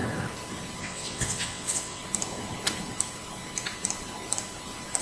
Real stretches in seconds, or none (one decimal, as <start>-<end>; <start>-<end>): 0.0-0.8; 2.0-5.0